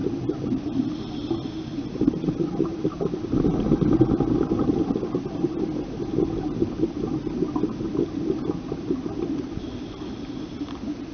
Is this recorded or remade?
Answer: recorded